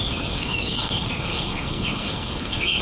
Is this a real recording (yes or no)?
no